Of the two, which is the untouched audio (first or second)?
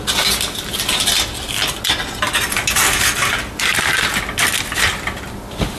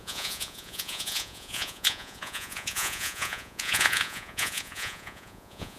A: first